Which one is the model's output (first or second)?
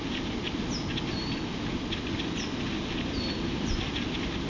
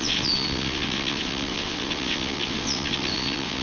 second